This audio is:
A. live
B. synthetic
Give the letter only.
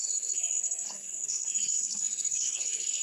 B